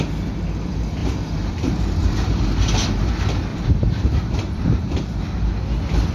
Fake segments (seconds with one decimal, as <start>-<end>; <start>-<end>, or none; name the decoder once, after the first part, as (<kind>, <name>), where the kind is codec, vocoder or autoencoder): 1.0-3.1 (vocoder, BigVGAN v2); 3.5-5.5